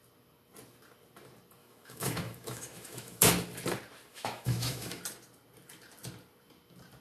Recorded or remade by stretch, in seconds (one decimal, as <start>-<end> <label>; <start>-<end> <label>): 0.0-1.6 recorded; 1.6-3.3 remade; 3.3-4.1 recorded; 4.1-5.0 remade; 5.0-7.0 recorded